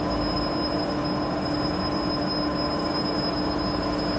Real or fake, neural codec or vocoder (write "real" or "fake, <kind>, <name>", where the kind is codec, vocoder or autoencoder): real